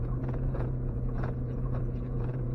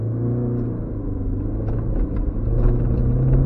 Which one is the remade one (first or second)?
first